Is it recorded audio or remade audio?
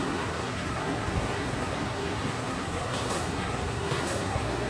remade